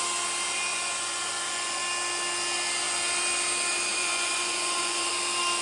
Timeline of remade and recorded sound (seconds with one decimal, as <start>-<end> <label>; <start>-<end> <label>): 0.0-0.7 recorded; 0.7-1.8 remade; 1.8-3.9 recorded; 3.9-5.1 remade; 5.1-5.6 recorded